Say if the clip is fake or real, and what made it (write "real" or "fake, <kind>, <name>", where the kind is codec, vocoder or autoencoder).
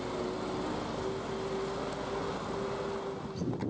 real